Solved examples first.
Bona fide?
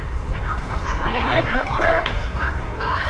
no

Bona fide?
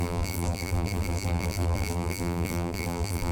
no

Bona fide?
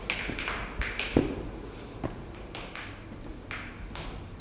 yes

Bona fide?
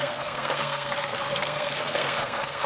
no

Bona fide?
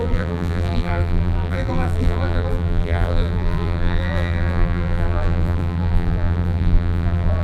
no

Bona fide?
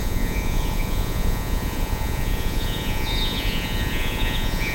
no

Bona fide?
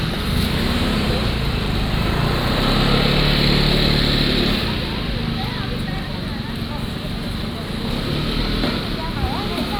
yes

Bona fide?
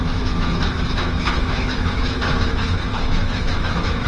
no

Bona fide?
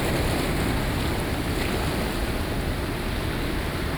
yes